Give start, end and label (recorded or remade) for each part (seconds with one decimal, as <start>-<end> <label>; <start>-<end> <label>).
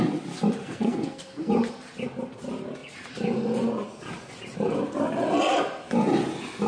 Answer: 0.0-0.6 recorded; 0.6-1.5 remade; 1.5-6.7 recorded